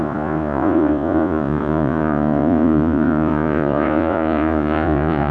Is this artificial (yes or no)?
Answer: yes